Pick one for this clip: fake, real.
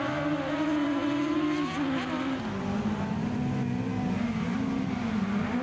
real